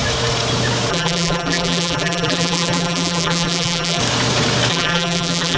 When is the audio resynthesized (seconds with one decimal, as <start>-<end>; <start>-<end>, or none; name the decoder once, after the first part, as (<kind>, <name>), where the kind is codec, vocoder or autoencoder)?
0.9-4.0 (vocoder, BigVGAN v2); 4.7-5.6